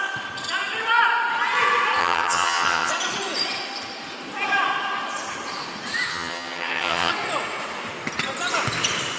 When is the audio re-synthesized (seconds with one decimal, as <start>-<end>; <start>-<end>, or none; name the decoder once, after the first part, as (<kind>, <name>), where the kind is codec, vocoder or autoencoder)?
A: 2.0-2.9 (vocoder, HiFi-GAN); 6.1-7.1